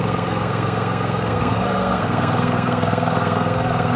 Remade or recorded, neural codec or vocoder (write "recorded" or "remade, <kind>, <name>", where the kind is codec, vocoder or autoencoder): remade, codec, SNAC